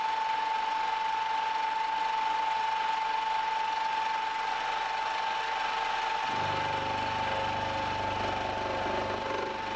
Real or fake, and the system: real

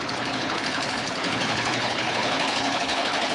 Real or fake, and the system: fake, codec, HILCodec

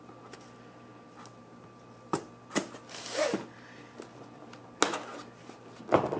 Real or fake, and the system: real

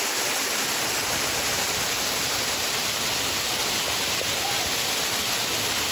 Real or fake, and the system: real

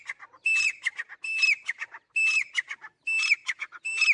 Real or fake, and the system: real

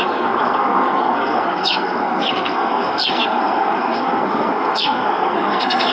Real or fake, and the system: fake, codec, SNAC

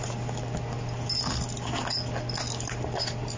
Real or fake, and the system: real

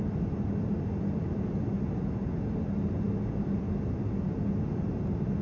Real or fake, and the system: real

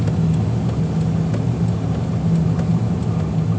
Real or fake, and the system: real